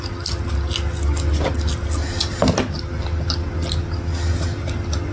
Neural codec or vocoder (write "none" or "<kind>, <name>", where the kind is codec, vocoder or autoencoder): none